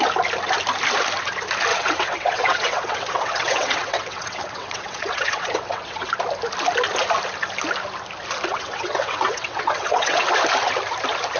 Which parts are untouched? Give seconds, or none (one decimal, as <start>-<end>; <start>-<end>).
0.0-1.7; 6.1-8.5; 10.2-11.4